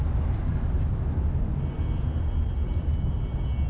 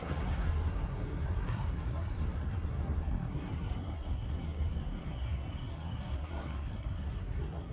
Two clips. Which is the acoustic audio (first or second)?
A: first